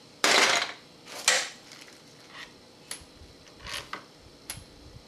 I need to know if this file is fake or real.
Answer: real